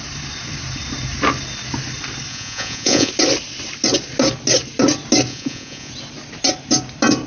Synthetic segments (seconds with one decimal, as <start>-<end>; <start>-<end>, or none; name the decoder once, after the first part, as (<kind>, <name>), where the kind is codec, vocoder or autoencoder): 2.3-3.1 (vocoder, Vocos); 5.3-5.9